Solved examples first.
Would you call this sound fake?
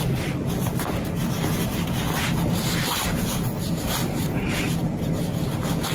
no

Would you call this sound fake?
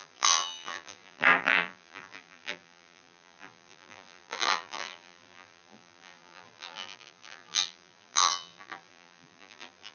yes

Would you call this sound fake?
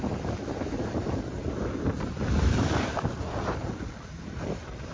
yes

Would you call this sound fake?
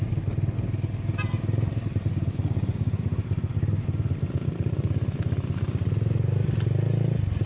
no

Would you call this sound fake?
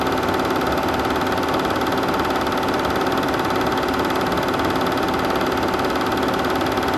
yes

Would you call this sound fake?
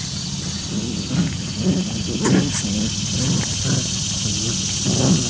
no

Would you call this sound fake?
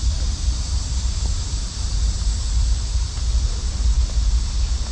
no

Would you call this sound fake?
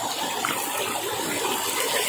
no